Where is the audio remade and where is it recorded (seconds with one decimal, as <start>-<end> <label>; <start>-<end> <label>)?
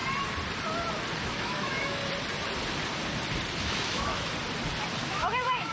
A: 0.0-1.2 recorded; 1.2-2.0 remade; 2.0-3.6 recorded; 3.6-4.3 remade; 4.3-5.0 recorded; 5.0-5.7 remade